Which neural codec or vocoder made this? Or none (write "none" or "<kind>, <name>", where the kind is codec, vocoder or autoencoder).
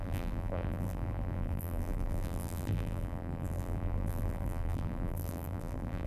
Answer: vocoder, BigVGAN v2